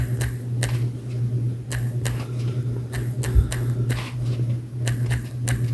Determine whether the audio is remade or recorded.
recorded